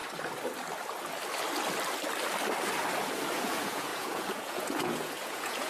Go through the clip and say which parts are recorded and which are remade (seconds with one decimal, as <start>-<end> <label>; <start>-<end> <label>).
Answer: 0.0-3.4 recorded; 3.4-5.7 remade